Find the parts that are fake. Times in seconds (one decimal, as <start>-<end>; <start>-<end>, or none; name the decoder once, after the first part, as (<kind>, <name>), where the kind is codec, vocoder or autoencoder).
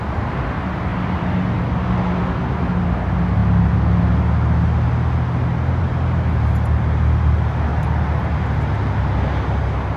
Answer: none